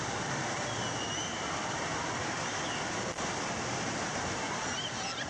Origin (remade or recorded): recorded